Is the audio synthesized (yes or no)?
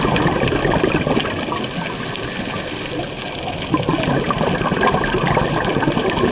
no